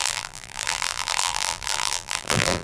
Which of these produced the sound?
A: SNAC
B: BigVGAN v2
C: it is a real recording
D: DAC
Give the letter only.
B